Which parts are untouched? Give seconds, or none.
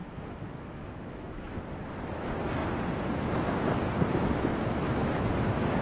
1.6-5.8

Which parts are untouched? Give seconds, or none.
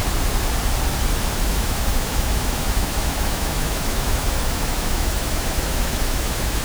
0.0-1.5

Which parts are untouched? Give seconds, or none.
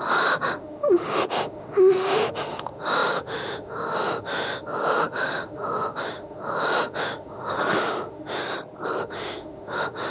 8.4-9.0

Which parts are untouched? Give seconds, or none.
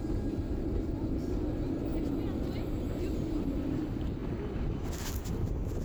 0.0-5.8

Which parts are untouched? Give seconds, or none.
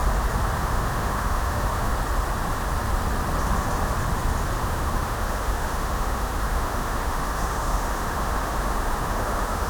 0.0-0.6; 1.9-4.6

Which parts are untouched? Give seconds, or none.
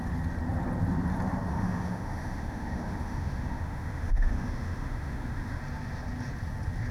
0.0-1.5; 5.6-6.9